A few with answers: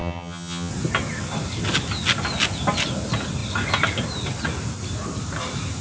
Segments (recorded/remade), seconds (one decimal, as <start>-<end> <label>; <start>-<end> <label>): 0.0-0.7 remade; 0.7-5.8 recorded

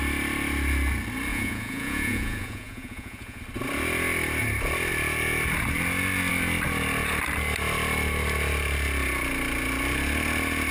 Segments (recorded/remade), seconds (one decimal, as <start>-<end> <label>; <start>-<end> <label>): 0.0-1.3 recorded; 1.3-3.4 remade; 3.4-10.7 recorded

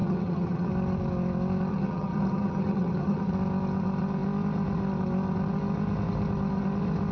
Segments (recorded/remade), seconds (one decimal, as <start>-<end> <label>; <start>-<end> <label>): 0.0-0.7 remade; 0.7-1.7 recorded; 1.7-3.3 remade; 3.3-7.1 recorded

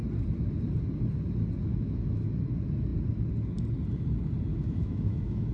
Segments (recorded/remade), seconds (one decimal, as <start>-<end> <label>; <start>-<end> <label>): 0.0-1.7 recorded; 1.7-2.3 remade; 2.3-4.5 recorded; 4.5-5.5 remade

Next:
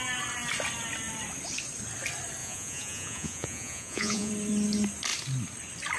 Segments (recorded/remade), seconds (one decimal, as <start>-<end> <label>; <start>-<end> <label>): 0.0-2.4 recorded; 2.4-4.3 remade; 4.3-6.0 recorded

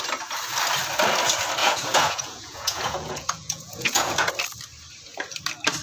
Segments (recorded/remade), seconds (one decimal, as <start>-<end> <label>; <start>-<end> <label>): 0.0-1.6 recorded; 1.6-4.3 remade; 4.3-5.8 recorded

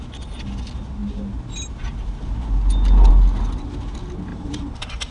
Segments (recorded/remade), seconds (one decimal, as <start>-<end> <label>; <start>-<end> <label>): 0.0-4.3 recorded; 4.3-5.1 remade